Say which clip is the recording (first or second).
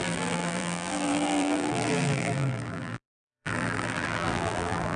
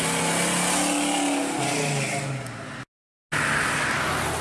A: second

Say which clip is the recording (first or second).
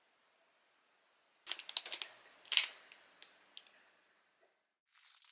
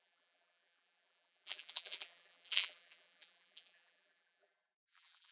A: first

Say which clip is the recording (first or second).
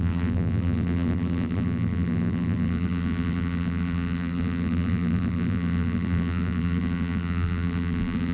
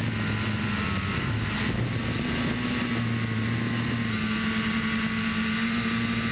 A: second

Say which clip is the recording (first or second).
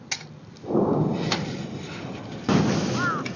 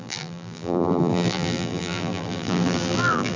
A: first